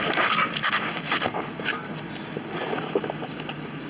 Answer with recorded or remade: recorded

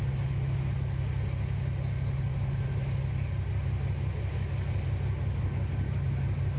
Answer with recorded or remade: recorded